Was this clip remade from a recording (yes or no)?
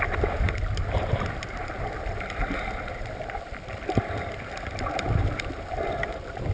no